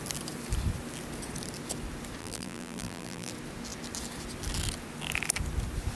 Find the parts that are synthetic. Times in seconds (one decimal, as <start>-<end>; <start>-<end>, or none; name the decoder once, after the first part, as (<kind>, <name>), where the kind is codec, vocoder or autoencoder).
2.2-3.3 (vocoder, BigVGAN v2)